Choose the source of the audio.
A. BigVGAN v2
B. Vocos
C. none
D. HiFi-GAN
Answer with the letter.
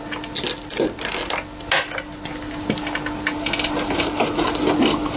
C